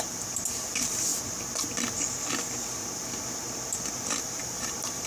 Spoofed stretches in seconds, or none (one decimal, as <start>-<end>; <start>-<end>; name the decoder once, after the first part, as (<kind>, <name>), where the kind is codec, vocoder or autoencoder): 0.0-1.1 (vocoder, BigVGAN v2); 4.2-5.1